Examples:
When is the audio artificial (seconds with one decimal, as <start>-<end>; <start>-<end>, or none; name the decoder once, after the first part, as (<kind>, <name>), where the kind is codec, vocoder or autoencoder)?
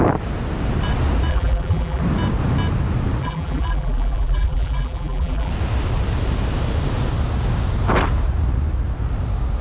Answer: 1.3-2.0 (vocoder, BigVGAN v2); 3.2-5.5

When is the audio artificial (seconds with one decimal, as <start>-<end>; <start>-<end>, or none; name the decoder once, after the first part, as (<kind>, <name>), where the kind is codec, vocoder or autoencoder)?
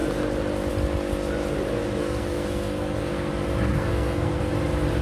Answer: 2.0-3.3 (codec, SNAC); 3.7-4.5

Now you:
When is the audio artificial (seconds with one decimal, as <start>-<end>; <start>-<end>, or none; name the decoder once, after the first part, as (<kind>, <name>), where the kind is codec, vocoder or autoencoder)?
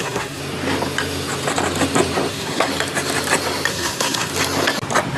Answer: 0.0-0.4 (codec, SNAC); 2.3-2.7; 3.7-4.3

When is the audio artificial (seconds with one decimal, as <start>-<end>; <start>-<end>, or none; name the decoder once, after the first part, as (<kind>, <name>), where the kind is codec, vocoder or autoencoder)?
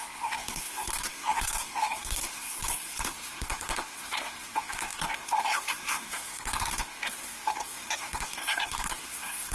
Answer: 0.0-9.5 (codec, SNAC)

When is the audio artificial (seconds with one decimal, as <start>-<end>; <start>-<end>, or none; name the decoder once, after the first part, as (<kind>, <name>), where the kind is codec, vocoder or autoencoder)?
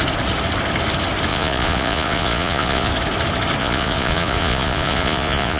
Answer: 1.3-2.9 (vocoder, Vocos); 3.6-5.6